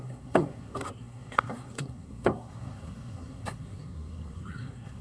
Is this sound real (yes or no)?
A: no